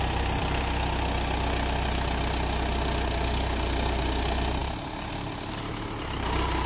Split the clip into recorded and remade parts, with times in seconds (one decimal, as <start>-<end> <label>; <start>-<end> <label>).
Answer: 0.0-6.7 recorded